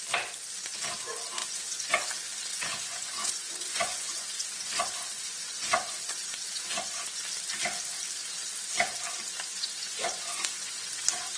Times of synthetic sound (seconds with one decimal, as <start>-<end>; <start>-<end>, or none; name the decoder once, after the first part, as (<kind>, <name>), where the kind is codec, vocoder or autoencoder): 1.4-1.9 (vocoder, Vocos); 2.5-7.2; 9.5-10.9